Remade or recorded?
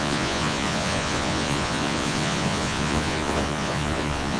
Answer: remade